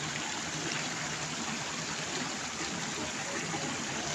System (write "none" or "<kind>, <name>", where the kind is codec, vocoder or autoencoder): none